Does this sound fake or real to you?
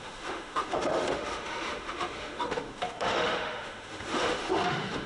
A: fake